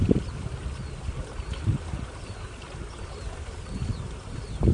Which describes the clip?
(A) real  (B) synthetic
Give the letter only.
A